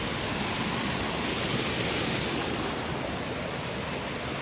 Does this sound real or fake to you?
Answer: real